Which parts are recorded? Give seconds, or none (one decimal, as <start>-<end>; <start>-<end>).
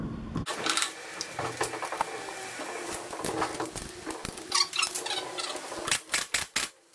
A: 0.0-0.5; 1.5-6.9